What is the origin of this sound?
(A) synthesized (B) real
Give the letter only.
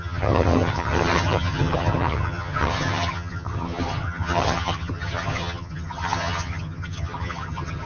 A